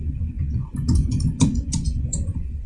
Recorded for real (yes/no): no